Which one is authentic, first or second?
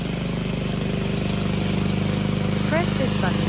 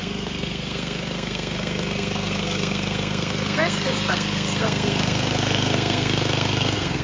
first